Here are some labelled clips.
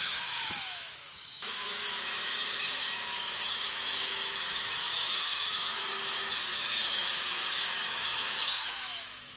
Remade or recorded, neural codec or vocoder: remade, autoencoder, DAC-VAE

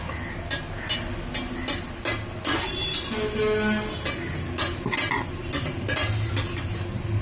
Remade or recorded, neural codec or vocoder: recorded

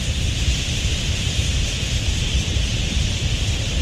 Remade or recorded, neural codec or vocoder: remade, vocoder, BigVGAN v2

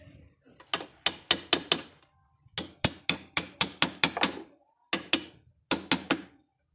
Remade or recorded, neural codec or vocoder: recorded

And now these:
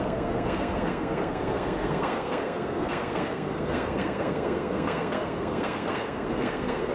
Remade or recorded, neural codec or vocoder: remade, codec, SNAC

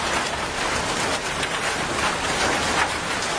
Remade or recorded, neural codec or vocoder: recorded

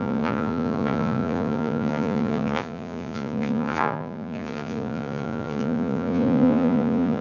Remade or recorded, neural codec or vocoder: remade, vocoder, Vocos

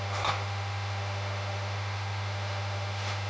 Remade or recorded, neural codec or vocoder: remade, autoencoder, DAC-VAE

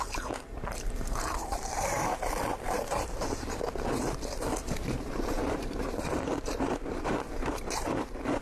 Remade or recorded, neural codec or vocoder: remade, vocoder, BigVGAN v2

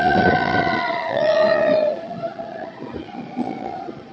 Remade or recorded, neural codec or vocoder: remade, vocoder, Vocos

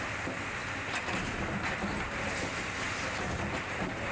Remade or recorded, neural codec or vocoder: recorded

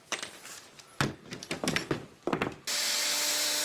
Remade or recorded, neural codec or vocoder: recorded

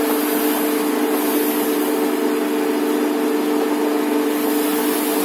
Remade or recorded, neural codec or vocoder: recorded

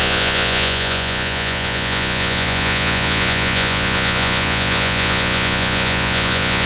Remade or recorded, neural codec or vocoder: remade, vocoder, Vocos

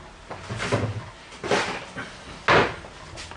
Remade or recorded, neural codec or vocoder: recorded